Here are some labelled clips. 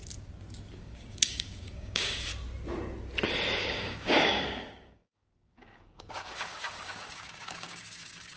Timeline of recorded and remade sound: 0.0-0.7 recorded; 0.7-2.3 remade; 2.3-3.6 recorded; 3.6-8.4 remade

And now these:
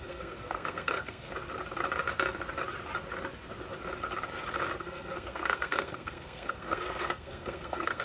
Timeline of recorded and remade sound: 0.0-1.3 remade; 1.3-4.8 recorded; 4.8-8.0 remade

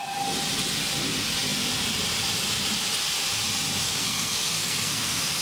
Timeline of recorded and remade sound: 0.0-3.8 recorded; 3.8-5.4 remade

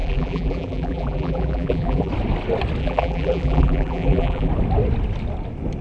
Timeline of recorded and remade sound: 0.0-2.1 remade; 2.1-2.8 recorded; 2.8-4.5 remade; 4.5-5.8 recorded

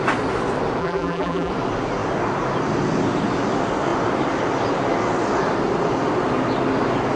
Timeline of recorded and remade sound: 0.0-0.8 recorded; 0.8-1.5 remade; 1.5-7.2 recorded

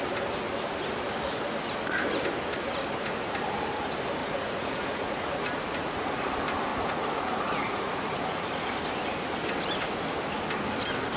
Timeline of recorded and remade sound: 0.0-4.2 recorded; 4.2-6.2 remade; 6.2-6.7 recorded; 6.7-8.5 remade; 8.5-11.2 recorded

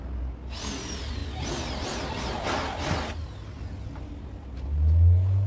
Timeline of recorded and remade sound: 0.0-5.5 recorded

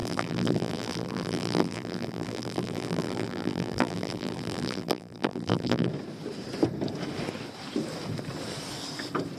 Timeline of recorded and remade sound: 0.0-5.9 remade; 5.9-9.4 recorded